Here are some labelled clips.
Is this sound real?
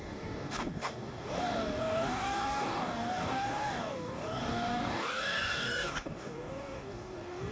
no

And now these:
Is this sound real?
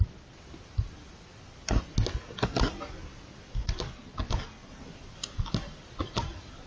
yes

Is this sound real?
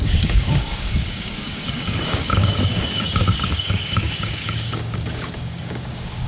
no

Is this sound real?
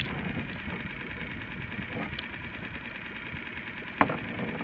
yes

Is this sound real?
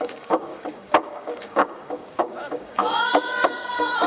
no